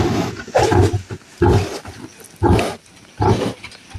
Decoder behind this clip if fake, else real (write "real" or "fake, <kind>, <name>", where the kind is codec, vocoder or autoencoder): real